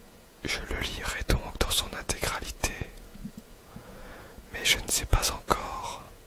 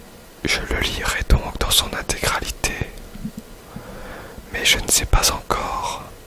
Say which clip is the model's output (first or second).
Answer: first